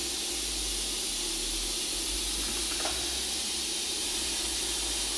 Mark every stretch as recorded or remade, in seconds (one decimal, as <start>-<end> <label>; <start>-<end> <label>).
0.0-5.2 recorded